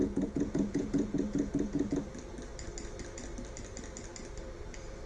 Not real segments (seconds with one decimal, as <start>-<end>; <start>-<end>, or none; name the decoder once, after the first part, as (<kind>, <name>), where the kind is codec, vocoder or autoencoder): 0.0-1.9 (vocoder, Vocos)